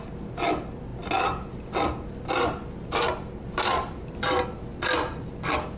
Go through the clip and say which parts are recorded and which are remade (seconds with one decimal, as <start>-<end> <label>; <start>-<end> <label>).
0.0-5.8 recorded